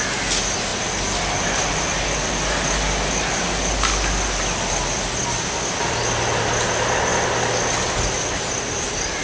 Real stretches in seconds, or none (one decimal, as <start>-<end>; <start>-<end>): 0.0-9.2